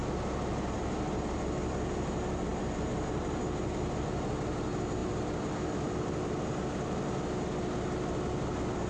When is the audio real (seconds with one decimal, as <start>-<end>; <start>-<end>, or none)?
0.0-8.9